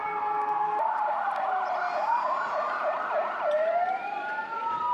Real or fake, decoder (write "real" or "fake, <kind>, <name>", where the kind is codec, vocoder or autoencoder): real